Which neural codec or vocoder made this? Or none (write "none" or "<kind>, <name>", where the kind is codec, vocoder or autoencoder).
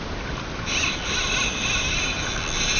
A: vocoder, BigVGAN v2